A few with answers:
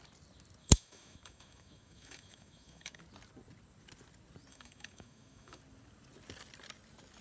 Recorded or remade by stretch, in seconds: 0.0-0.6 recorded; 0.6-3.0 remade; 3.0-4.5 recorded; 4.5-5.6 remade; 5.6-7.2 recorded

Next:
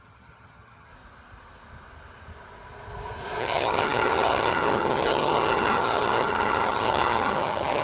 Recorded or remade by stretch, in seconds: 0.0-0.9 remade; 0.9-3.4 recorded; 3.4-7.8 remade

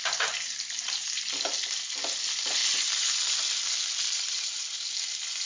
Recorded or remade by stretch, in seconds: 0.0-1.3 remade; 1.3-2.6 recorded; 2.6-3.4 remade; 3.4-5.5 recorded